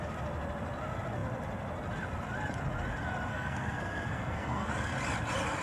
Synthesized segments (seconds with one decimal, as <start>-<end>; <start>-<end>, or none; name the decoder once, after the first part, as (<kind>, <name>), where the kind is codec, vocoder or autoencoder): 3.3-4.7 (codec, SNAC)